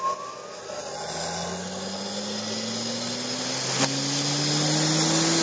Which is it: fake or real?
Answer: real